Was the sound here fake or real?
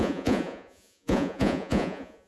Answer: fake